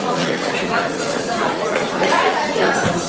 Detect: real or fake fake